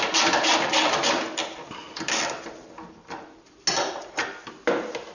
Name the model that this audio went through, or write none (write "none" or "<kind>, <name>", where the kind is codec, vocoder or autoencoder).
none